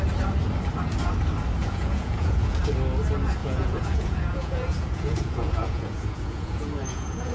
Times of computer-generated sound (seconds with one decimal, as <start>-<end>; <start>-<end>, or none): 1.6-2.6; 3.4-7.3